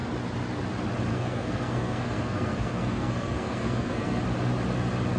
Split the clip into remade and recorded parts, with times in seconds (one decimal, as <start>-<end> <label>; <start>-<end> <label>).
0.0-1.1 recorded; 1.1-4.2 remade; 4.2-5.2 recorded